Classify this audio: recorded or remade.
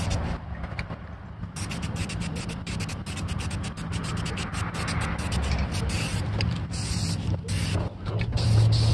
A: recorded